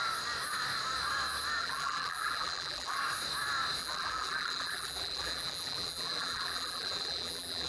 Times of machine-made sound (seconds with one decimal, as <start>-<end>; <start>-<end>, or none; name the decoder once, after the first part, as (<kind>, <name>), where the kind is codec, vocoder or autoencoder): 1.6-3.0 (vocoder, BigVGAN v2); 3.8-7.7